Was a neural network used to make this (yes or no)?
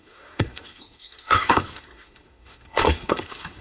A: yes